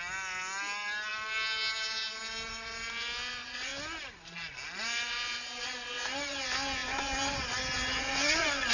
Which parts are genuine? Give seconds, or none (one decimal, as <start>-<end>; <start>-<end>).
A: 0.0-8.7